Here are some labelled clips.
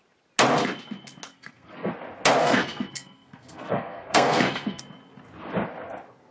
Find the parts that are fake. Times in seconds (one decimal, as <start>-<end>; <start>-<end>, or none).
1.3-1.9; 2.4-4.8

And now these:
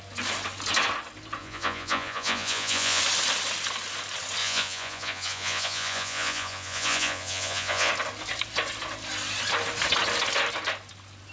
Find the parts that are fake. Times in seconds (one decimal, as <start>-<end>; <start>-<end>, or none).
1.4-3.0; 4.4-7.9

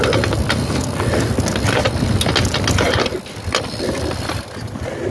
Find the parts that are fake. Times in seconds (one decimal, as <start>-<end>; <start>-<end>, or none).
none

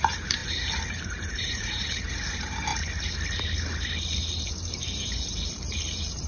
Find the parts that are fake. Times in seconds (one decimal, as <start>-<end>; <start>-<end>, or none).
0.0-0.4; 0.9-2.7; 4.5-6.3

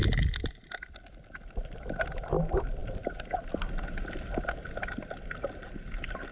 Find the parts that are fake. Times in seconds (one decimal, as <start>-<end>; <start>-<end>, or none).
none